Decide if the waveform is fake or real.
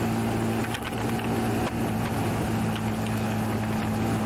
real